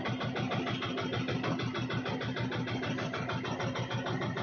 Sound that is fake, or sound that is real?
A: real